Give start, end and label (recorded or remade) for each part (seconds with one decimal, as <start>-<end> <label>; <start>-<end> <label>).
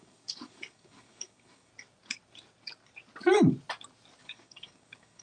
0.0-1.7 remade; 1.7-4.2 recorded; 4.2-5.2 remade